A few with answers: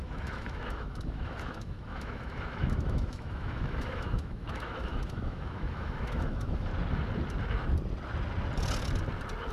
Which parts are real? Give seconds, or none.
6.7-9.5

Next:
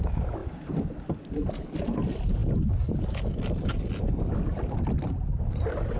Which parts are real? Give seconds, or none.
0.0-6.0